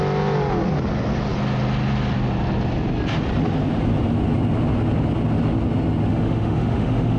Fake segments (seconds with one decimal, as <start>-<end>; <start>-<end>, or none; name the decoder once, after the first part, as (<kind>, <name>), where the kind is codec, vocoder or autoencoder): 6.1-7.2 (autoencoder, DAC-VAE)